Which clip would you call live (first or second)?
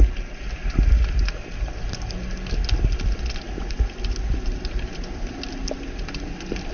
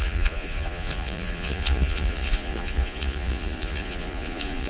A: first